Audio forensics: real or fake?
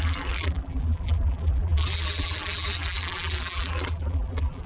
fake